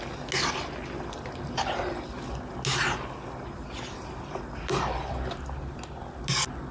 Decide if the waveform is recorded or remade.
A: recorded